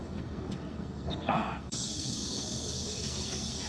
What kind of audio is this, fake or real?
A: fake